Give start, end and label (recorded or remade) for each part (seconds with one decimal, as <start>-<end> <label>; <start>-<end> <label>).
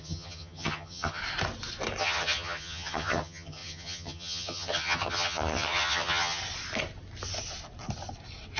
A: 0.0-1.2 remade; 1.2-2.0 recorded; 2.0-6.4 remade; 6.4-8.6 recorded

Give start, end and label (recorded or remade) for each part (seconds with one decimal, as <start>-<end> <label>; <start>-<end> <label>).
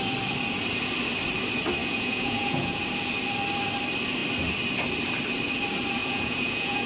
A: 0.0-1.8 recorded; 1.8-2.8 remade; 2.8-6.0 recorded; 6.0-6.9 remade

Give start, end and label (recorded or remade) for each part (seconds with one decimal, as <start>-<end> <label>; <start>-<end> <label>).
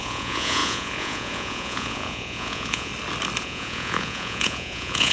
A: 0.0-2.9 remade; 2.9-3.4 recorded; 3.4-5.1 remade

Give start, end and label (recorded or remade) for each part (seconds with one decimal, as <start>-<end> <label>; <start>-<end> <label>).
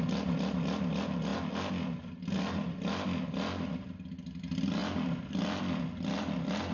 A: 0.0-6.7 recorded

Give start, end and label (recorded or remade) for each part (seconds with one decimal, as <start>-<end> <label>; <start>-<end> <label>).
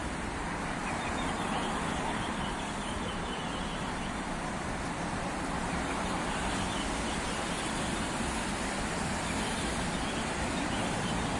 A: 0.0-0.8 remade; 0.8-2.3 recorded; 2.3-11.4 remade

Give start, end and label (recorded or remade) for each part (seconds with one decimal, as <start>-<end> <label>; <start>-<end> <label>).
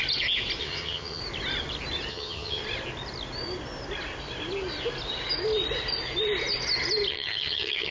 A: 0.0-0.6 recorded; 0.6-1.2 remade; 1.2-2.1 recorded; 2.1-2.6 remade; 2.6-7.1 recorded; 7.1-7.9 remade